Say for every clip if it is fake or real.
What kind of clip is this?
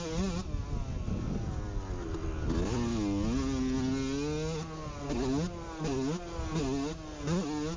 real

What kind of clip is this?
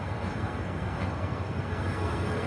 fake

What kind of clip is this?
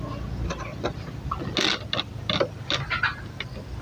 real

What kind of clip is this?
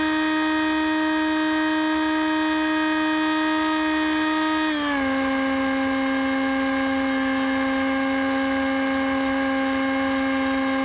real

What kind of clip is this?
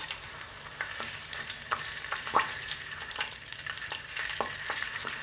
fake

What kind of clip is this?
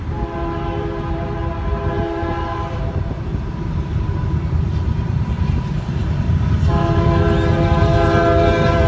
fake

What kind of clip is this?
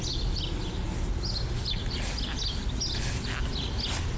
real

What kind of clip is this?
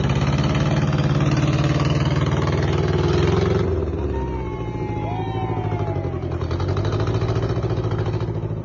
real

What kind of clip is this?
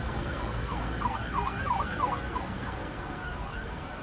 fake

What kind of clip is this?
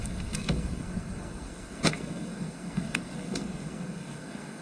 fake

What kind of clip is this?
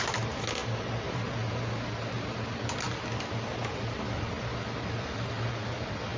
real